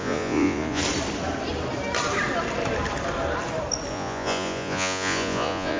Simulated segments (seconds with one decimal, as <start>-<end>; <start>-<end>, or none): 0.0-0.8; 3.9-5.8